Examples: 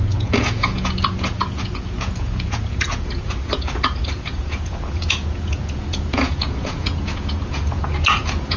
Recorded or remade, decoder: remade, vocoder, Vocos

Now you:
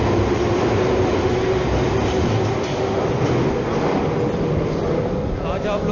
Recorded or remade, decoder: recorded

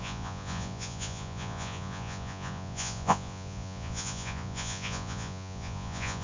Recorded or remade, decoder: remade, vocoder, Vocos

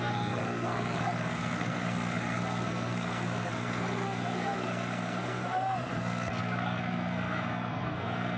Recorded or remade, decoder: remade, codec, SNAC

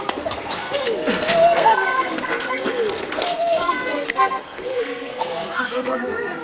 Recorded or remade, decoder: remade, codec, SNAC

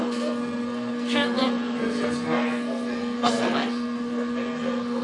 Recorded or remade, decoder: remade, codec, SNAC